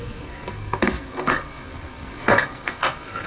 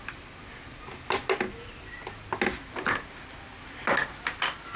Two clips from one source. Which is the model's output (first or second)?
first